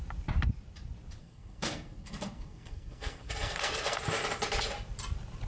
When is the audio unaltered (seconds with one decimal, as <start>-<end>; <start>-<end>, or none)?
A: 0.0-1.2; 4.0-5.5